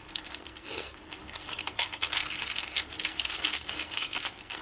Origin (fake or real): fake